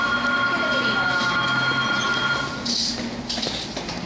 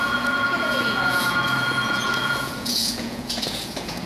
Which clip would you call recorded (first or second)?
first